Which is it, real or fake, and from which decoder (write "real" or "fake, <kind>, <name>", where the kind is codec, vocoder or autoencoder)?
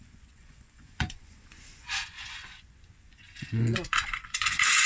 fake, vocoder, Vocos